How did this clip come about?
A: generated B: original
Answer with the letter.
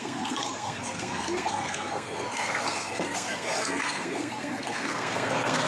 A